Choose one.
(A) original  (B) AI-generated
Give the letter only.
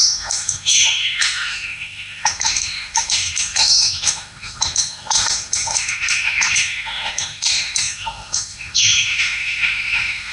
B